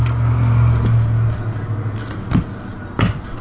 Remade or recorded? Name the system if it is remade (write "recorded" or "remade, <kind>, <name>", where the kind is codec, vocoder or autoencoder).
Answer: recorded